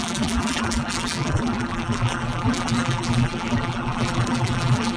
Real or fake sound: fake